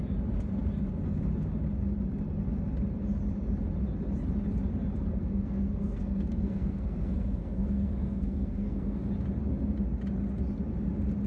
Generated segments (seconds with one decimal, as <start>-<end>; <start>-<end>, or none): 5.1-9.0